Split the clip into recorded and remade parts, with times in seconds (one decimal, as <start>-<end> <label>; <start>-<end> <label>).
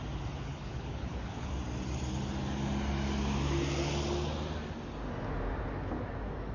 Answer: 0.0-0.5 recorded; 0.5-1.5 remade; 1.5-6.5 recorded